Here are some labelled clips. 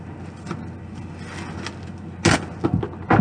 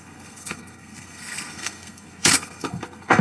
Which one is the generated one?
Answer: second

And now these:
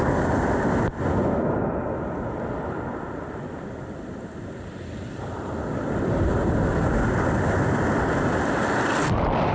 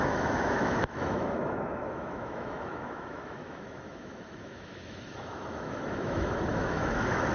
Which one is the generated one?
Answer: second